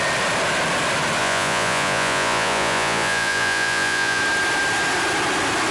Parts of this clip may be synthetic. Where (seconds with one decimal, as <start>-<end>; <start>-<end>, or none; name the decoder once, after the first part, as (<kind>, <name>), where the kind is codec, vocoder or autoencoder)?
1.2-4.2 (vocoder, Vocos)